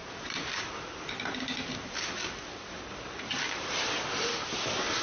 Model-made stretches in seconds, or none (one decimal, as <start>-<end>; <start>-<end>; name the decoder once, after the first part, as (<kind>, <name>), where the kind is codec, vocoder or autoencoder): none